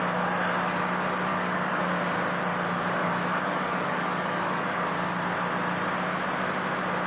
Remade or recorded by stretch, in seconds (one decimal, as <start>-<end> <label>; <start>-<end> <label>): 0.0-1.3 recorded; 1.3-1.8 remade; 1.8-3.0 recorded; 3.0-4.9 remade; 4.9-7.1 recorded